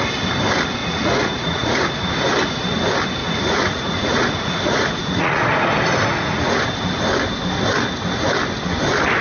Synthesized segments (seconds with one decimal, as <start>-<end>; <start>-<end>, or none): 0.8-1.9; 3.2-5.4; 6.1-6.6